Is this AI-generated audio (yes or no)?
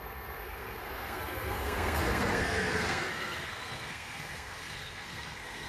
yes